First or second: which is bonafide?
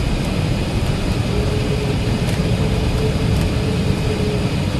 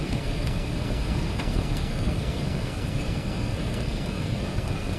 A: first